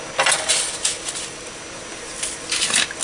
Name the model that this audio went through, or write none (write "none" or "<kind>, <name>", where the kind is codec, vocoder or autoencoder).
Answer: none